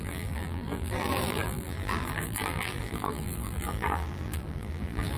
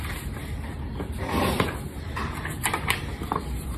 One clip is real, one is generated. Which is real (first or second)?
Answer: second